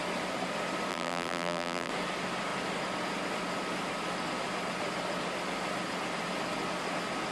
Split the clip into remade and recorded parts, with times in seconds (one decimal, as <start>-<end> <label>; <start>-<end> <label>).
0.0-0.9 recorded; 0.9-1.9 remade; 1.9-7.3 recorded

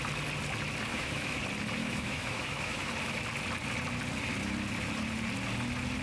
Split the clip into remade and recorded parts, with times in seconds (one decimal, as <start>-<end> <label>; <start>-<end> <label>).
0.0-0.9 recorded; 0.9-1.4 remade; 1.4-1.8 recorded; 1.8-2.9 remade; 2.9-6.0 recorded

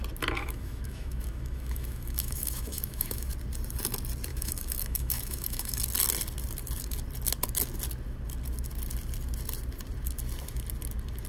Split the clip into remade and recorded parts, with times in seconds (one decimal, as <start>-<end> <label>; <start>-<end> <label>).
0.0-0.4 recorded; 0.4-3.3 remade; 3.3-4.3 recorded; 4.3-5.8 remade; 5.8-11.3 recorded

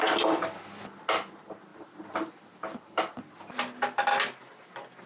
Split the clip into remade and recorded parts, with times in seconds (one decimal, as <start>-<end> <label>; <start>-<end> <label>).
0.0-5.1 recorded

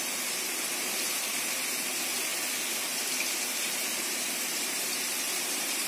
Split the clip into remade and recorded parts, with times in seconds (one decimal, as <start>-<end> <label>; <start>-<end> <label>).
0.0-2.3 remade; 2.3-3.4 recorded; 3.4-5.9 remade

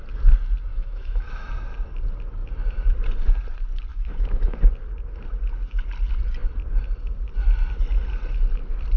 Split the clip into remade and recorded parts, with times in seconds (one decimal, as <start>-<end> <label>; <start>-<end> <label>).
0.0-0.7 recorded; 0.7-1.5 remade; 1.5-3.9 recorded; 3.9-4.6 remade; 4.6-9.0 recorded

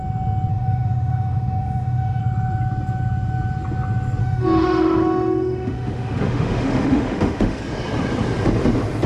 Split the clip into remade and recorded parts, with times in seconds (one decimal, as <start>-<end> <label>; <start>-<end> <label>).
0.0-0.5 recorded; 0.5-2.2 remade; 2.2-4.2 recorded; 4.2-7.6 remade; 7.6-9.1 recorded